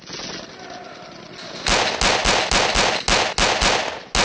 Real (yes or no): yes